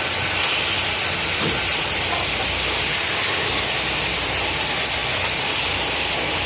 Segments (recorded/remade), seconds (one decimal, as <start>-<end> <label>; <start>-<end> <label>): 0.0-1.7 remade; 1.7-2.3 recorded; 2.3-6.5 remade